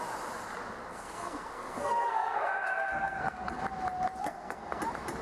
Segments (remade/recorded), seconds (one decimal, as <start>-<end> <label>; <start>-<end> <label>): 0.0-0.9 recorded; 0.9-3.6 remade; 3.6-4.2 recorded; 4.2-4.8 remade; 4.8-5.2 recorded